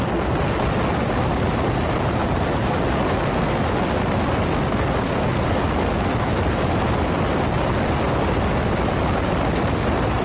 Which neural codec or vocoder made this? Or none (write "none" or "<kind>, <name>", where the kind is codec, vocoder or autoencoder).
none